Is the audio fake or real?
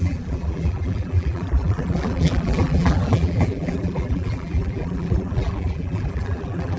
fake